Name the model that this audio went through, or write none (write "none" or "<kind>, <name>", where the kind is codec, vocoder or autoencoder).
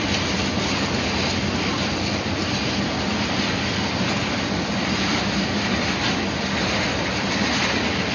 none